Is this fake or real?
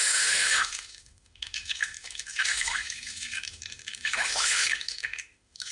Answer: fake